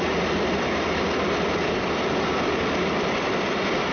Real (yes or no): yes